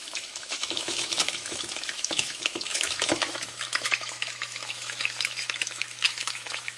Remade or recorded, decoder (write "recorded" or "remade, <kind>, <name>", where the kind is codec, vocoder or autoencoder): remade, autoencoder, DAC-VAE